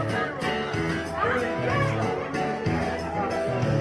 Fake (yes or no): no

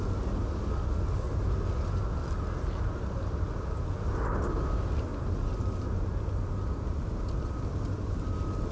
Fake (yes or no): no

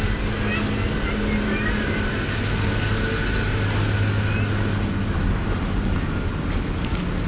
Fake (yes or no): no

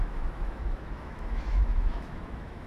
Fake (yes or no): yes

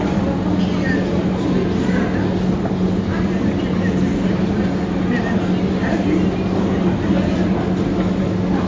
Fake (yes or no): no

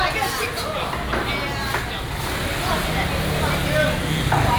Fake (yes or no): no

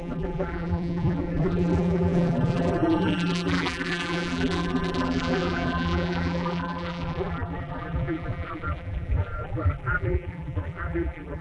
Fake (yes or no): yes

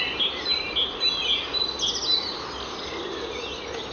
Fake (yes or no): no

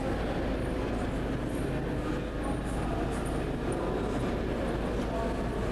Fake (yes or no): no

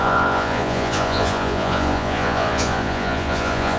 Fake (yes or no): yes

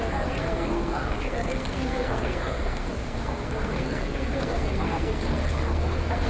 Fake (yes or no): yes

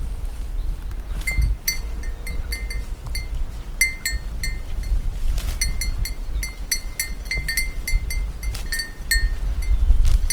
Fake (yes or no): no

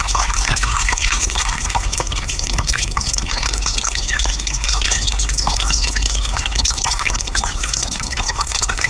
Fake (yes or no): yes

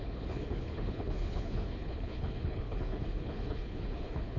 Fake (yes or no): yes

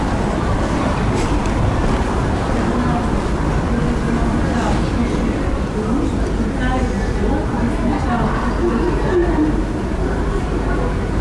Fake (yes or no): no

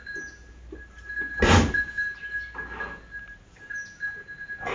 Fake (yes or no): no